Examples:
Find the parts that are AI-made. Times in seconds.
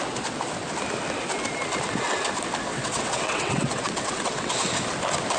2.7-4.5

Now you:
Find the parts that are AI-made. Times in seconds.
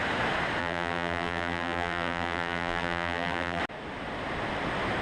0.6-3.6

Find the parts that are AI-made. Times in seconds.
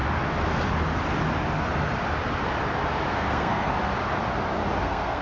3.1-3.7; 4.8-5.2